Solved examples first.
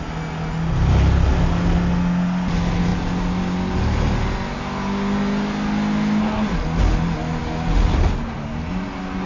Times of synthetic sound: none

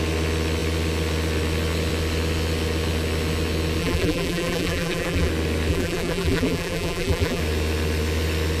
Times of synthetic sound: 3.8-5.3 (vocoder, BigVGAN v2); 5.7-7.4

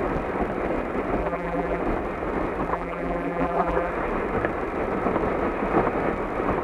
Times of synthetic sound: 1.2-1.8 (vocoder, BigVGAN v2); 2.7-3.9

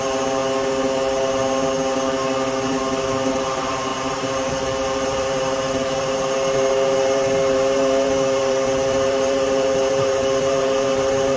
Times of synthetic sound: 0.0-0.4 (vocoder, BigVGAN v2); 3.3-11.4

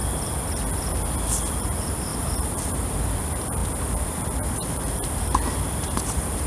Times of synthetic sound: 1.5-6.5 (vocoder, BigVGAN v2)

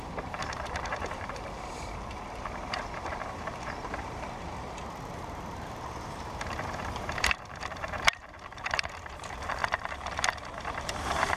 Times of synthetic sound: 0.0-4.5 (vocoder, BigVGAN v2); 5.1-9.6; 10.9-11.4

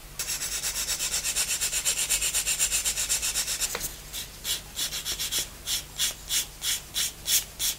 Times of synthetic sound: none

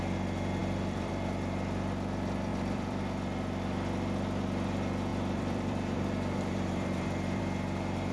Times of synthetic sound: 0.6-1.1 (vocoder, BigVGAN v2); 2.5-3.0; 5.1-7.4